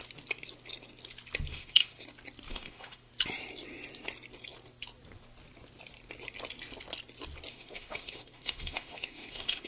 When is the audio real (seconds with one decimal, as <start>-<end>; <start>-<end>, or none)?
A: 0.0-1.5; 2.0-2.5; 3.1-7.5

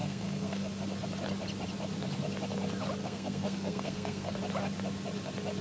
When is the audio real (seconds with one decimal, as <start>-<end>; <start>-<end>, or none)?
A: 0.7-3.0; 4.4-5.6

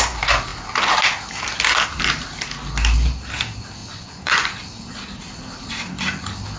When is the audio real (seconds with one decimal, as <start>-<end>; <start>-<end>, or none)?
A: 0.0-3.8; 4.5-6.6

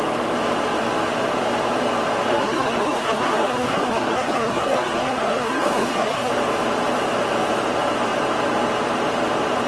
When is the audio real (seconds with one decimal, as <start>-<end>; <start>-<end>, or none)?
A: 0.0-2.3; 6.3-9.7